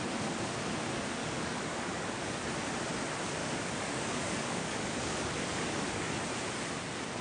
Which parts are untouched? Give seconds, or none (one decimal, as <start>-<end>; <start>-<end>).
0.0-1.2; 2.4-3.4; 6.2-7.2